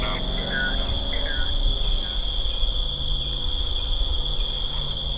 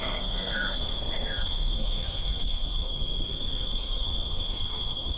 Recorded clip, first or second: first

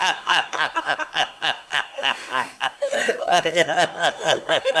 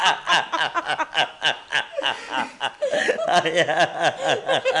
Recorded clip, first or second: second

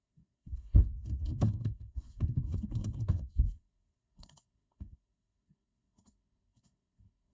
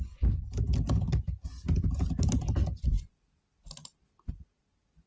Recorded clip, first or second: second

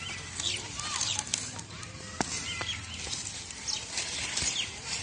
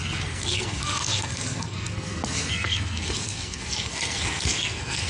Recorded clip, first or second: first